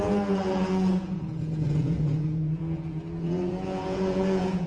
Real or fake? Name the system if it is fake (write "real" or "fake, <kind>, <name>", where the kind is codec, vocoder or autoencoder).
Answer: fake, vocoder, Vocos